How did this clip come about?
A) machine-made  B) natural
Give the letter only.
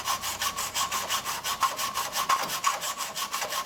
B